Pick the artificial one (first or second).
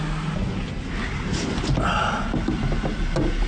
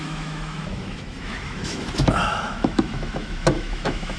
second